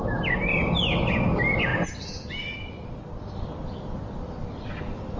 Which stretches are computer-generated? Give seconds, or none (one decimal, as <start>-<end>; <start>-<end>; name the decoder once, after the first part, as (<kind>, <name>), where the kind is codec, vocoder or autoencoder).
none